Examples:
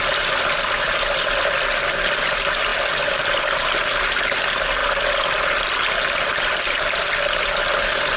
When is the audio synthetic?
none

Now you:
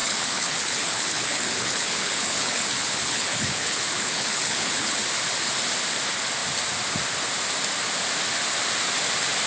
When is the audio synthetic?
0.0-5.0 (codec, HILCodec)

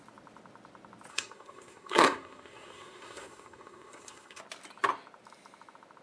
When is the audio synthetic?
1.1-4.4 (codec, SNAC)

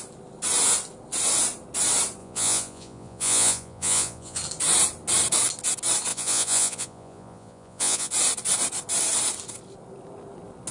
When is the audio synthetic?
2.2-4.4 (vocoder, Vocos); 6.1-8.1

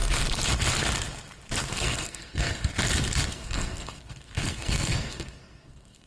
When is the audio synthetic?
1.7-2.7 (codec, SNAC); 3.3-6.1

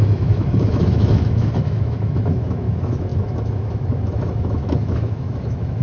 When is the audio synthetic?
0.0-5.8 (autoencoder, DAC-VAE)